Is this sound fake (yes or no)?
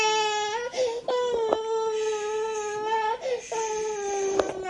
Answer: no